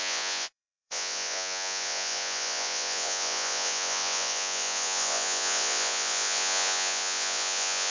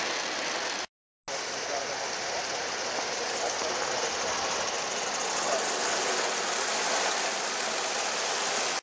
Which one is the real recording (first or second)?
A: second